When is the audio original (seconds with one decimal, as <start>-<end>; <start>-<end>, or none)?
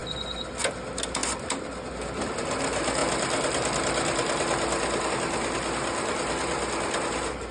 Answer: 0.0-7.5